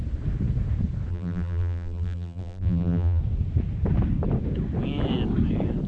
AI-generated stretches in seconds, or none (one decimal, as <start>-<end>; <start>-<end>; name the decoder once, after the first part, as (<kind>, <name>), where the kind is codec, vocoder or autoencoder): 1.1-3.2 (vocoder, BigVGAN v2)